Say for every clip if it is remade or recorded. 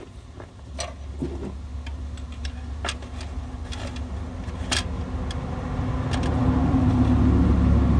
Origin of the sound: recorded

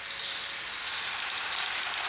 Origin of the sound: recorded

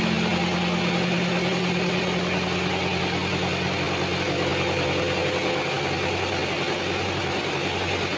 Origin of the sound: recorded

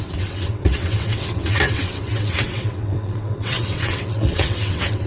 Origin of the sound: remade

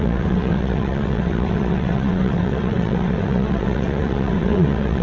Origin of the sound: remade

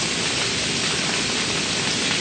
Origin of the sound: recorded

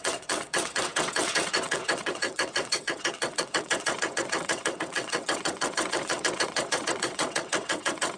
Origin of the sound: remade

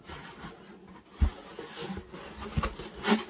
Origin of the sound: recorded